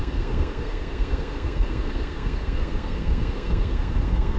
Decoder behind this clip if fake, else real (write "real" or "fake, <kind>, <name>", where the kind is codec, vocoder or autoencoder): fake, codec, SNAC